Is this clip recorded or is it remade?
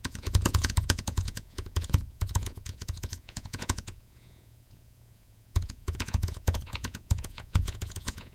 remade